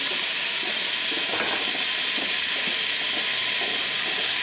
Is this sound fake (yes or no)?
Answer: no